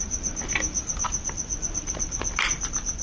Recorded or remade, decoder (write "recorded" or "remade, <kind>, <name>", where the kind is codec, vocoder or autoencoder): recorded